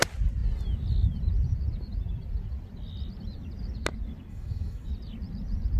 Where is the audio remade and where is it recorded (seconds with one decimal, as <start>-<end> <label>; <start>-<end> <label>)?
0.0-4.3 recorded; 4.3-4.9 remade; 4.9-5.8 recorded